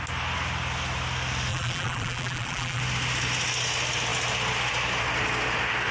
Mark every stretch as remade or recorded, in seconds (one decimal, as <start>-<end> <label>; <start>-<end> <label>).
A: 0.0-1.5 recorded; 1.5-2.8 remade; 2.8-5.9 recorded

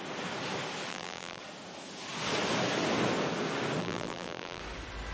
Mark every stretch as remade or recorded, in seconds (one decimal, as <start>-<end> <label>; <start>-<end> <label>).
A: 0.0-0.9 recorded; 0.9-1.4 remade; 1.4-3.8 recorded; 3.8-4.6 remade; 4.6-5.1 recorded

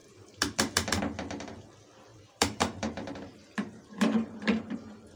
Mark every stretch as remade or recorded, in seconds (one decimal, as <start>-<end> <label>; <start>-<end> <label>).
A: 0.0-1.0 remade; 1.0-2.1 recorded; 2.1-5.2 remade

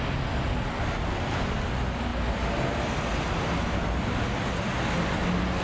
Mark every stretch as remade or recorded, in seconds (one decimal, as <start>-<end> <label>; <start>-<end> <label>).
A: 0.0-5.6 recorded

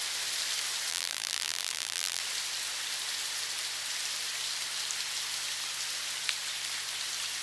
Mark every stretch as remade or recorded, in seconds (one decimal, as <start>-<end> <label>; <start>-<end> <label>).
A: 0.0-0.9 recorded; 0.9-2.2 remade; 2.2-7.4 recorded

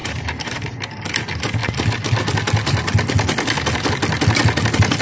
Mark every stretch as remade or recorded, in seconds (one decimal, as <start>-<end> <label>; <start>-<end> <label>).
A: 0.0-0.8 remade; 0.8-5.0 recorded

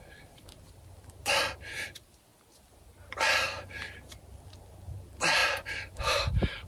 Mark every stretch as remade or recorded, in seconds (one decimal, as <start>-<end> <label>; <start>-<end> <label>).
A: 0.0-2.3 remade; 2.3-4.9 recorded; 4.9-6.7 remade